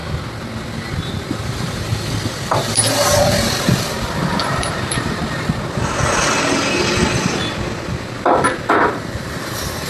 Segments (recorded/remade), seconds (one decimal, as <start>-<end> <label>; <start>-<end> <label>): 0.0-1.2 recorded; 1.2-1.9 remade; 1.9-2.5 recorded; 2.5-3.2 remade; 3.2-4.1 recorded; 4.1-5.2 remade; 5.2-8.7 recorded; 8.7-9.9 remade